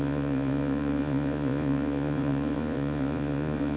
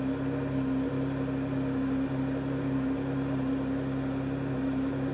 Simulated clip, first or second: first